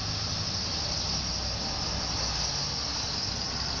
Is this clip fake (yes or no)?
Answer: no